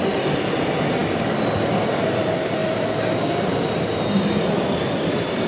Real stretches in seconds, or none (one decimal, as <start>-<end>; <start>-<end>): 0.0-5.5